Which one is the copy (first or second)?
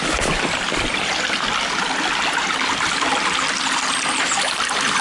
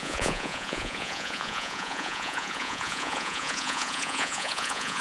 second